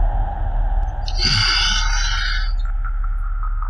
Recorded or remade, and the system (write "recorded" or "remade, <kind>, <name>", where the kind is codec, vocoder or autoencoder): recorded